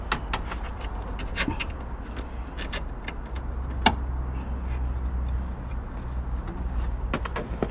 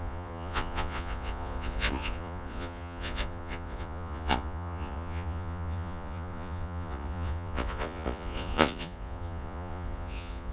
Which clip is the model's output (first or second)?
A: second